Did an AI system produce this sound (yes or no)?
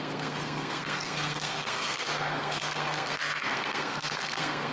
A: yes